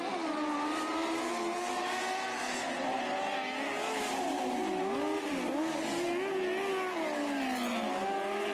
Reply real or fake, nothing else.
real